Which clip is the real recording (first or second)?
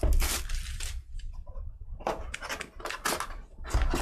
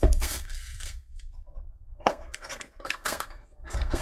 first